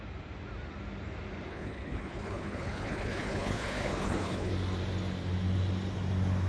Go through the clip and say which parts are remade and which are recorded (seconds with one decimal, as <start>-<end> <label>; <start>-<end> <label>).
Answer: 0.0-1.5 recorded; 1.5-4.5 remade; 4.5-6.5 recorded

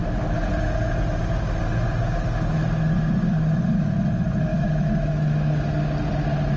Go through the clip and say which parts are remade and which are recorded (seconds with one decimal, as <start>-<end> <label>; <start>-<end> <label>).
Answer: 0.0-4.5 recorded; 4.5-5.6 remade; 5.6-6.6 recorded

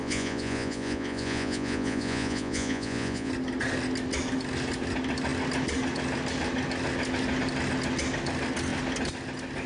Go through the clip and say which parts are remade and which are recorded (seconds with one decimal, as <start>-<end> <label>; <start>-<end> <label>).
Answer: 0.0-3.3 remade; 3.3-9.7 recorded

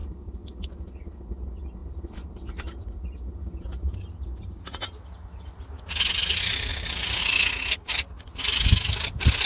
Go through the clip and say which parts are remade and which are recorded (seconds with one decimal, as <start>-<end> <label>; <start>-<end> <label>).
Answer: 0.0-0.6 remade; 0.6-1.8 recorded; 1.8-2.9 remade; 2.9-6.7 recorded; 6.7-7.2 remade; 7.2-9.5 recorded

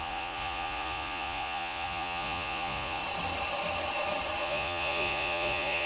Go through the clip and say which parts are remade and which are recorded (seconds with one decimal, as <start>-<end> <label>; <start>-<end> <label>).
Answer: 0.0-3.0 remade; 3.0-4.4 recorded; 4.4-5.9 remade